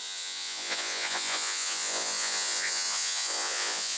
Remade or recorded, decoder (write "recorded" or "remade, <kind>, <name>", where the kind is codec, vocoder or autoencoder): remade, vocoder, Vocos